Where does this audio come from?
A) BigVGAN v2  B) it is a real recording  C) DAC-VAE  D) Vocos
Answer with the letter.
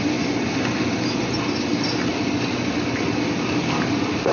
B